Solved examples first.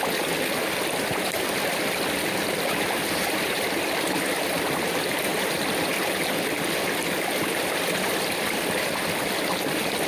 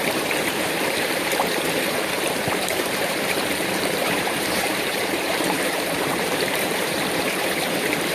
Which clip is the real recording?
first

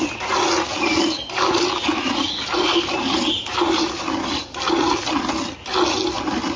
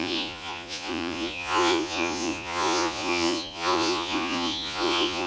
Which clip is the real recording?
first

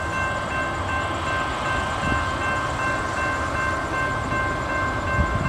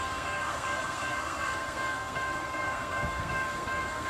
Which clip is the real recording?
first